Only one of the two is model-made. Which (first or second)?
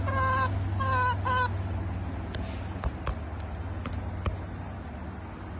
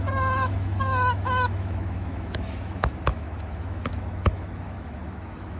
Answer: second